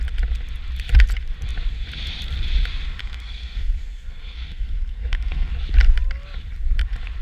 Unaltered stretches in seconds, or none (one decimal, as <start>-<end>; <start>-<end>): 0.0-3.0; 5.5-7.2